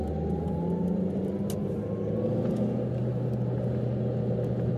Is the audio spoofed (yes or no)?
no